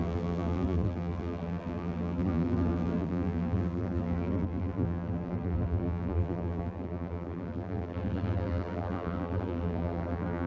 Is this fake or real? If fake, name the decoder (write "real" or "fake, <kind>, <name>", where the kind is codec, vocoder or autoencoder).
fake, vocoder, BigVGAN v2